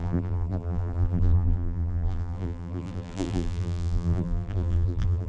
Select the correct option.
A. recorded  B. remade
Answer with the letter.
B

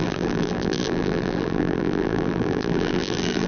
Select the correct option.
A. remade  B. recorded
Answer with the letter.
A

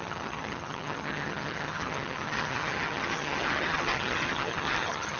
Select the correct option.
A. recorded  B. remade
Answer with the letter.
B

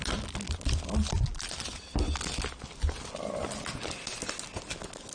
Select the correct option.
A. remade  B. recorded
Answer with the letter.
B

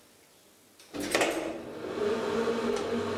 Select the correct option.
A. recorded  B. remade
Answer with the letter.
A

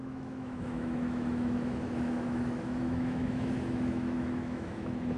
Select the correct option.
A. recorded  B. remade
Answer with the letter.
B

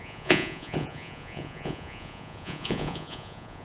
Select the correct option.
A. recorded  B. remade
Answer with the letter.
B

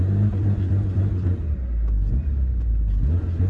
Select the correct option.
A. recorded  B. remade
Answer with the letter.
A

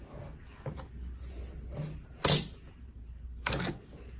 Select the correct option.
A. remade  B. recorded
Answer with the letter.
B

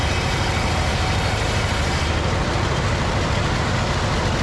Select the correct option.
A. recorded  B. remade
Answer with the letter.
A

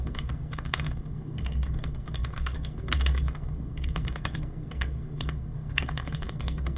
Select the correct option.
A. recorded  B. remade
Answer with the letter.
B